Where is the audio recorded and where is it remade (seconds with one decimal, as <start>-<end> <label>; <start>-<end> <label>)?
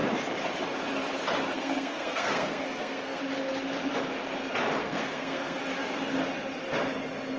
0.0-1.5 recorded; 1.5-3.2 remade; 3.2-4.8 recorded; 4.8-5.6 remade; 5.6-7.4 recorded